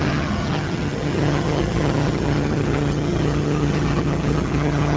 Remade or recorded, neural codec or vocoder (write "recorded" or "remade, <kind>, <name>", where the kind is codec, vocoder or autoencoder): remade, vocoder, HiFi-GAN